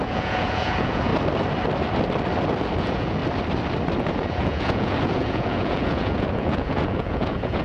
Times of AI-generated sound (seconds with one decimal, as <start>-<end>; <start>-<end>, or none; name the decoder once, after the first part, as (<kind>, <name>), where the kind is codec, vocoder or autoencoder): 0.0-1.1 (vocoder, Vocos); 2.8-3.2; 4.0-7.6